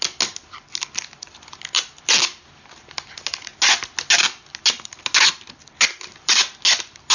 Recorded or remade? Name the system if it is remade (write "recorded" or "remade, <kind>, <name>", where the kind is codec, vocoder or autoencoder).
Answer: recorded